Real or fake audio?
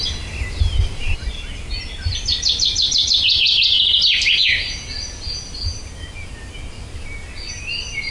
real